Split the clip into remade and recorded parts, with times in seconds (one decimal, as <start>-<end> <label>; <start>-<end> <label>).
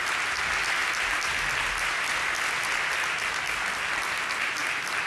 0.0-5.1 recorded